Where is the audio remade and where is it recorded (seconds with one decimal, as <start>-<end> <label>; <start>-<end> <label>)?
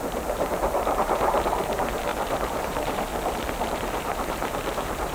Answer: 0.0-2.1 remade; 2.1-2.6 recorded; 2.6-3.1 remade; 3.1-3.7 recorded; 3.7-5.1 remade